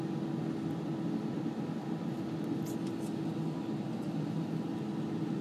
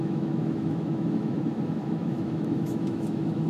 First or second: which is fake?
second